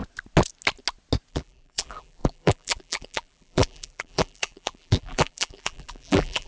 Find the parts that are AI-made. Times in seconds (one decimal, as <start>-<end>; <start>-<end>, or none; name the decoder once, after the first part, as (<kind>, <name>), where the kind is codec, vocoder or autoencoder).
1.3-6.5 (vocoder, BigVGAN v2)